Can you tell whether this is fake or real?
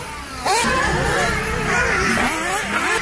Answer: real